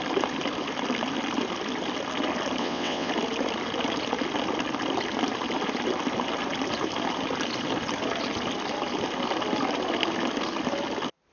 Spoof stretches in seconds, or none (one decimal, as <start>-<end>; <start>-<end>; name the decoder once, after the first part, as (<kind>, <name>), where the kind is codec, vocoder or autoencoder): 2.6-3.1 (vocoder, WaveNeXt)